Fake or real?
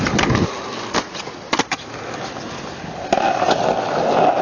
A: real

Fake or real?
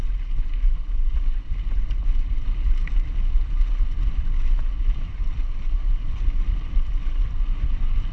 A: real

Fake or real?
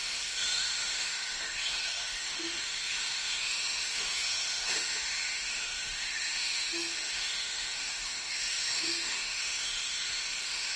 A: fake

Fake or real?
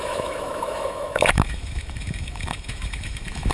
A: fake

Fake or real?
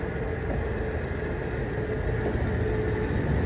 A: real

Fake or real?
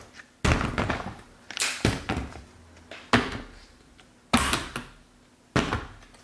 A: real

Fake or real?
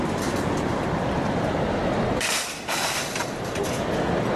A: real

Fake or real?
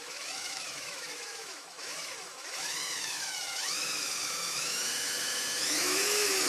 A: fake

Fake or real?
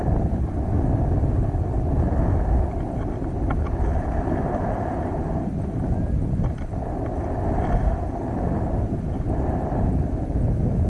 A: real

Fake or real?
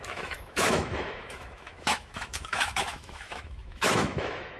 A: fake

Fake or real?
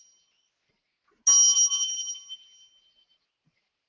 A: real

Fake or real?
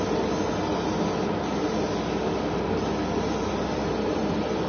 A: real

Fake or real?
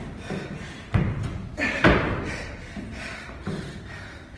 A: real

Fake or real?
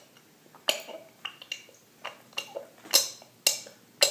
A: real